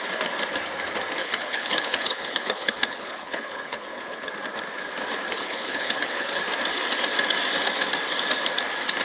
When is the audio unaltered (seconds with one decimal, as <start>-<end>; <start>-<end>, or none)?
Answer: 0.0-1.2; 4.3-5.4; 6.4-9.0